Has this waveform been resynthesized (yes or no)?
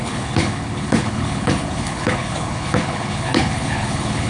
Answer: yes